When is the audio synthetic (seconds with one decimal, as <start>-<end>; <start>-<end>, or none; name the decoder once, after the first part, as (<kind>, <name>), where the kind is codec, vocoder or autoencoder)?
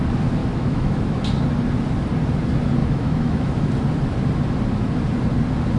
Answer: 0.4-1.2 (autoencoder, DAC-VAE); 2.8-3.7